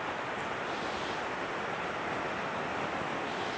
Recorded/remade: recorded